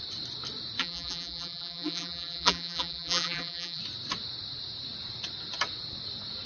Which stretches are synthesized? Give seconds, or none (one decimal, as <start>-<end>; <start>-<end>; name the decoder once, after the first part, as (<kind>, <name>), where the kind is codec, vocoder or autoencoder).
0.8-3.8 (vocoder, BigVGAN v2)